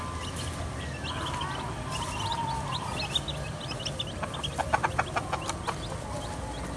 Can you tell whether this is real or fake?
real